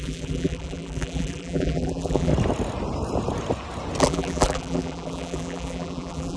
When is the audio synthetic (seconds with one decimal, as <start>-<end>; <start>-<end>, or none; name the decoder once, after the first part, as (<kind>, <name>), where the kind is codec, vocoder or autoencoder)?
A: 0.0-2.3 (vocoder, BigVGAN v2); 4.0-6.4

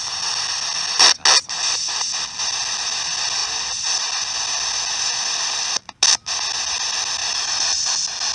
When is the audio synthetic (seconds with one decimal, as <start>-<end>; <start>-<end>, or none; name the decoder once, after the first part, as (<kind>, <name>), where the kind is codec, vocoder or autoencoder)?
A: 7.2-7.9 (vocoder, BigVGAN v2)

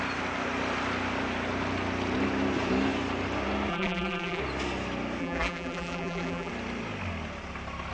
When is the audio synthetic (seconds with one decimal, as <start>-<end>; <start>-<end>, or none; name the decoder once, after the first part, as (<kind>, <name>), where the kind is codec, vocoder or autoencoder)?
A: 3.7-4.4 (vocoder, BigVGAN v2); 5.2-6.5